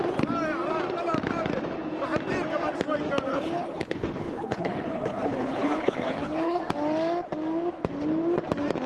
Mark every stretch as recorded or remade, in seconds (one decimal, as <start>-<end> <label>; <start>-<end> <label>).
0.0-3.3 recorded; 3.3-6.6 remade; 6.6-8.9 recorded